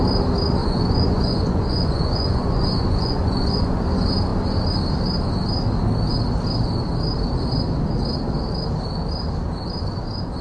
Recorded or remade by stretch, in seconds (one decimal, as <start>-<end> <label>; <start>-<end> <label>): 0.0-0.6 recorded; 0.6-3.8 remade; 3.8-10.4 recorded